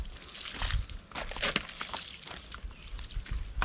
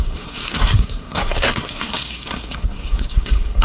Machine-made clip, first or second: second